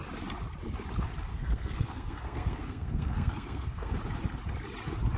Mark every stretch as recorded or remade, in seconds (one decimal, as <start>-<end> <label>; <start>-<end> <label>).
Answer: 0.0-1.3 recorded; 1.3-3.9 remade; 3.9-5.2 recorded